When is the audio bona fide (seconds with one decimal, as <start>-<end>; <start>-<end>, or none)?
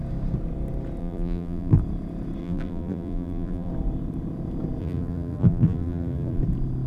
0.0-1.0; 1.8-2.4; 3.7-4.8; 6.4-6.9